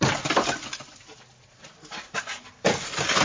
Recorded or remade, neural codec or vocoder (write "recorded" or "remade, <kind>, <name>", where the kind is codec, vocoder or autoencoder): recorded